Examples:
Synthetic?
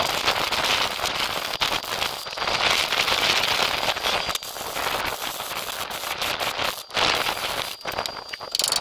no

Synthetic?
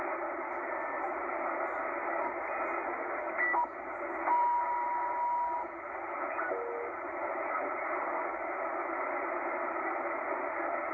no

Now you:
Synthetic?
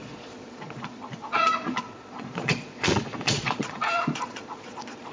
yes